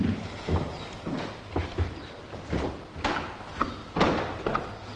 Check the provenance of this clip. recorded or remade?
recorded